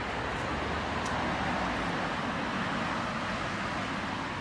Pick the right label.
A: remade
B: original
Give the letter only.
B